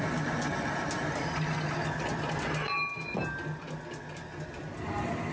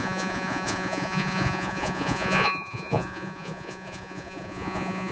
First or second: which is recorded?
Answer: first